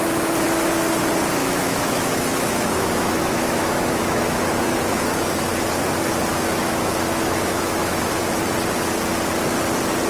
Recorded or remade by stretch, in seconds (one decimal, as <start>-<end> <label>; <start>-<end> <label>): 0.0-1.4 recorded; 1.4-5.5 remade; 5.5-6.3 recorded; 6.3-8.1 remade; 8.1-10.1 recorded